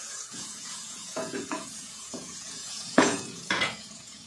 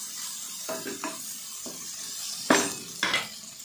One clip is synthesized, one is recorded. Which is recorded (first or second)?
second